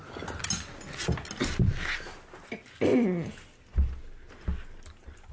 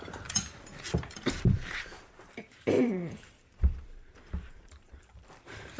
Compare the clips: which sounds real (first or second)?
first